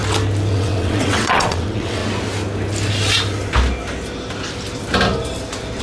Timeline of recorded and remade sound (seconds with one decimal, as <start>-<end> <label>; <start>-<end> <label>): 0.0-0.5 recorded; 0.5-2.0 remade; 2.0-5.8 recorded